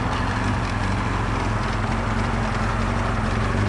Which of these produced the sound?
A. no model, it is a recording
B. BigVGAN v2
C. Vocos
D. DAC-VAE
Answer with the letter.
A